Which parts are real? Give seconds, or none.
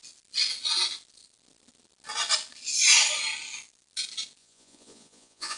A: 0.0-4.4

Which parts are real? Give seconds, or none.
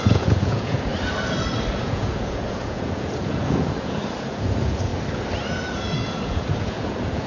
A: 0.9-1.8; 4.9-5.7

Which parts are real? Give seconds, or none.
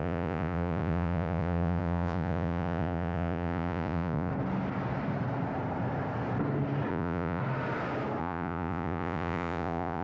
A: 4.3-6.9; 7.4-8.2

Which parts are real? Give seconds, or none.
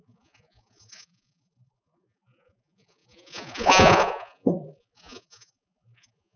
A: none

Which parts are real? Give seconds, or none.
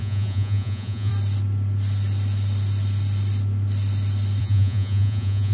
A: 1.1-4.4